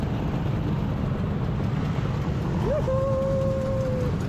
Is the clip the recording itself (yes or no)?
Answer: yes